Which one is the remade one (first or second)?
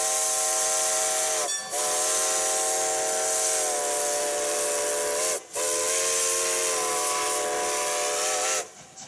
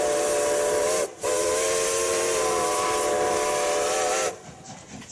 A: second